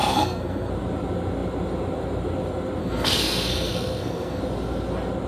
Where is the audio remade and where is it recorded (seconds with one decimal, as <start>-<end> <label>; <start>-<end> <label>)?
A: 0.0-0.7 remade; 0.7-2.8 recorded; 2.8-4.4 remade; 4.4-5.3 recorded